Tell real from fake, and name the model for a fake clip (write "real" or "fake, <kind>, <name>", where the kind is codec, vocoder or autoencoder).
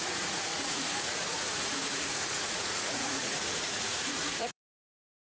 fake, vocoder, Vocos